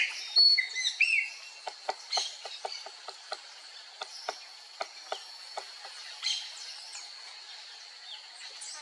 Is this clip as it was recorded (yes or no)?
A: yes